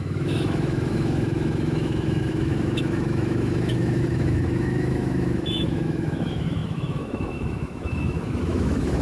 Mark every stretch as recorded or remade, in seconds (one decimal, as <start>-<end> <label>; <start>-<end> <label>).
0.0-9.0 remade